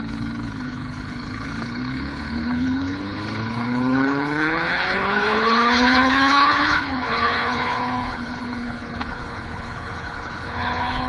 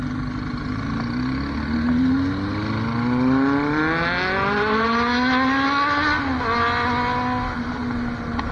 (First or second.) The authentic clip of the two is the second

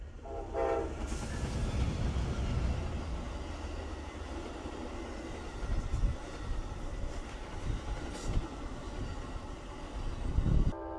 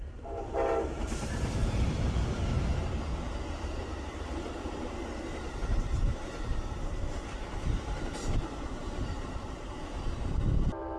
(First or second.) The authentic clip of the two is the first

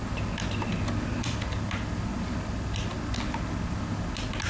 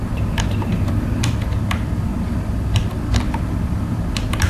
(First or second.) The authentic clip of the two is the first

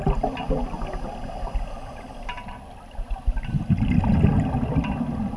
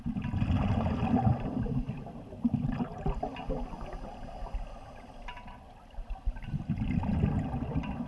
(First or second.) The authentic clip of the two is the first